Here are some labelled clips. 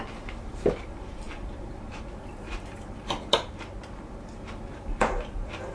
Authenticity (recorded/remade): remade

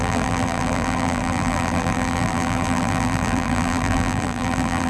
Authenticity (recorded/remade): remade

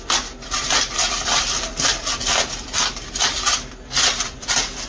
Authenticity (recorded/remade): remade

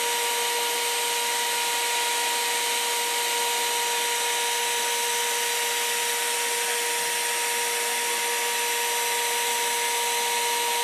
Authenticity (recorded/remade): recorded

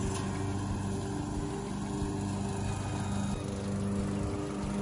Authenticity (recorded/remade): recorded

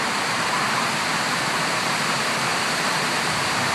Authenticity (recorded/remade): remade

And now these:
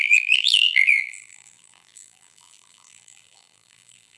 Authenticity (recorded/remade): remade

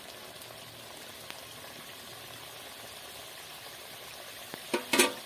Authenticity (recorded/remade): recorded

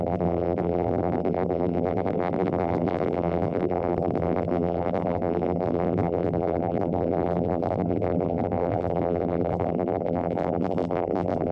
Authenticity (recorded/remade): remade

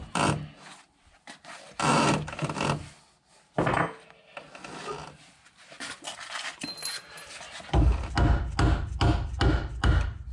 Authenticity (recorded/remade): recorded